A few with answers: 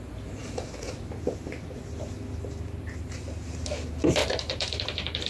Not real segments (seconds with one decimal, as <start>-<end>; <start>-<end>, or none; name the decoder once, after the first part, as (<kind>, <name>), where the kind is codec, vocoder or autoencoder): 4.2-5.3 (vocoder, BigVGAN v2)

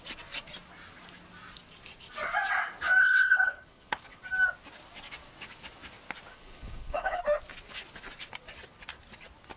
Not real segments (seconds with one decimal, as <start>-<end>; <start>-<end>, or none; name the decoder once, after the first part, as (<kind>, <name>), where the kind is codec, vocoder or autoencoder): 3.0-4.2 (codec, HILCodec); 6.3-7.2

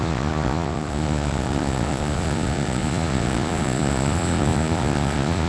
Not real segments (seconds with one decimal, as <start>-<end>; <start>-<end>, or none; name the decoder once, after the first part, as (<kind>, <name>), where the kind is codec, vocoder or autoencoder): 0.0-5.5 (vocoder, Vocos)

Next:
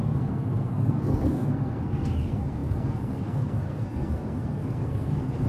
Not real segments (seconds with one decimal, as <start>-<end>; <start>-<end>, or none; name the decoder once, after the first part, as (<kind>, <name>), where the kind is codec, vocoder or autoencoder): 0.0-5.5 (codec, SNAC)

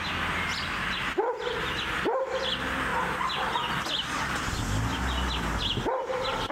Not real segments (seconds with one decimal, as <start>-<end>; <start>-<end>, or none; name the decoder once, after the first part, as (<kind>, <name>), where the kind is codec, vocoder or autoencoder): none

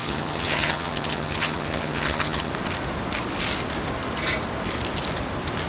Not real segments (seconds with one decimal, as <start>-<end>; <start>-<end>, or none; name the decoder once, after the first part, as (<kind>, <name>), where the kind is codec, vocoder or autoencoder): 0.0-2.5 (vocoder, HiFi-GAN)